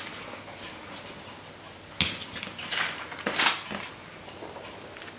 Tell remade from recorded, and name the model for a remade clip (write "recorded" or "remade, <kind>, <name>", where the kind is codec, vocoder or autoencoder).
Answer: recorded